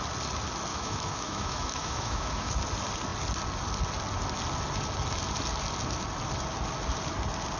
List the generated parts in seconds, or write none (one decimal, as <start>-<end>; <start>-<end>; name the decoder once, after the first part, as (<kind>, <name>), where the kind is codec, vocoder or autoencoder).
0.7-2.5 (autoencoder, DAC-VAE)